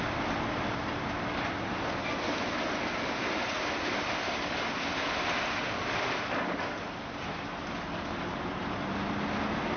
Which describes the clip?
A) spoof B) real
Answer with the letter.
B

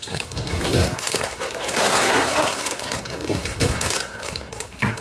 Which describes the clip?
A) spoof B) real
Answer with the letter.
A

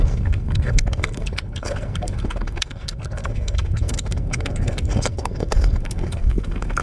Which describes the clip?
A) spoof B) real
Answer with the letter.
A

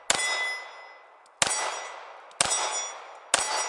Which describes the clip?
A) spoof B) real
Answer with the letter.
B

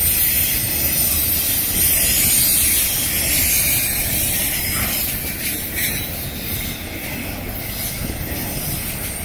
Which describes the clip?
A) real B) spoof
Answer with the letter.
A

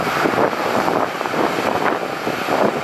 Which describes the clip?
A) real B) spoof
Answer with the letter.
A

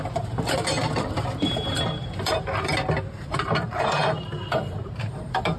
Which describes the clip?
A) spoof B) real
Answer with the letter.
A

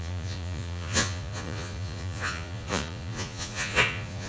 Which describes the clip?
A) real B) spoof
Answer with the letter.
B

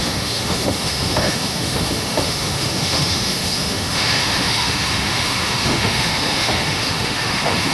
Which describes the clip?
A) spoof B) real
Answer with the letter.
A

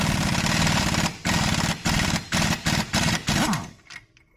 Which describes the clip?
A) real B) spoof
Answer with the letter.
A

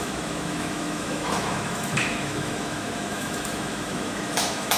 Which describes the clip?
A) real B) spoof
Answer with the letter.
B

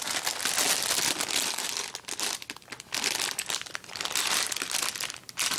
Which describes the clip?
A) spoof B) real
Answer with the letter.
B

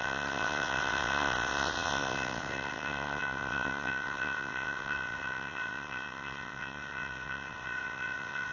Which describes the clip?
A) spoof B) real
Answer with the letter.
A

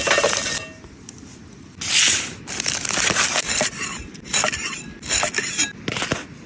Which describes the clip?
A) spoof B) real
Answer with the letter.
B